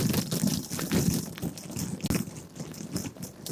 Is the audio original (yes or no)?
yes